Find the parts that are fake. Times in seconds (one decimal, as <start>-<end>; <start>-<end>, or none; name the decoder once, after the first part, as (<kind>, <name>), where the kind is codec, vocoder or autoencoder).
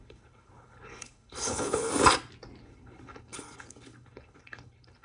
0.0-1.9 (codec, HILCodec); 2.6-5.0